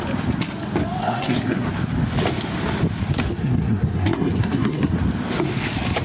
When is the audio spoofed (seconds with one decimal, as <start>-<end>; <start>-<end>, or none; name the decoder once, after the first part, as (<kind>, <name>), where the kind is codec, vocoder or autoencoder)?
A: 1.0-1.7 (codec, SNAC); 3.2-4.9